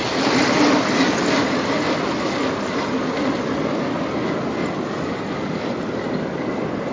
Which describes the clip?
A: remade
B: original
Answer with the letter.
B